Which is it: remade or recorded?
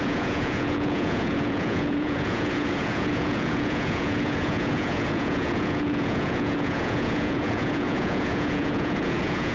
remade